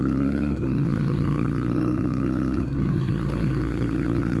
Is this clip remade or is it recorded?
remade